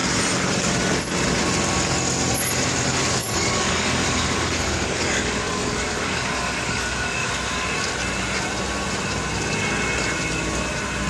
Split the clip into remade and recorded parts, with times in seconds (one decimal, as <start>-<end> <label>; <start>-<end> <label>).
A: 0.0-3.2 recorded; 3.2-7.3 remade; 7.3-11.1 recorded